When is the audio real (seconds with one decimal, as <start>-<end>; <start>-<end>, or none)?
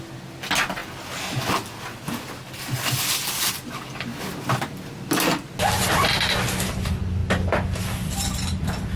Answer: 0.0-9.0